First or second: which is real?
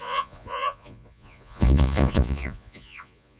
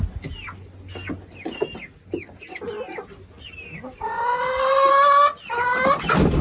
second